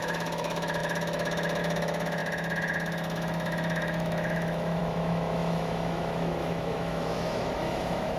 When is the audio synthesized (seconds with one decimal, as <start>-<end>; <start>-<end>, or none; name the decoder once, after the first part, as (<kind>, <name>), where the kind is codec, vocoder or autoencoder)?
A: 0.0-8.2 (autoencoder, DAC-VAE)